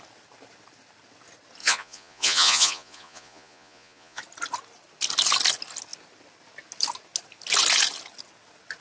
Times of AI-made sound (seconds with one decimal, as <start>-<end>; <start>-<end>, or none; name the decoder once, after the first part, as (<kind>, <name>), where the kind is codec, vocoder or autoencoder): 1.6-4.2 (vocoder, Vocos)